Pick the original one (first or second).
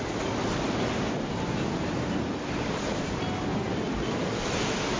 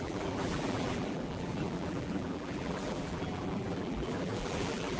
first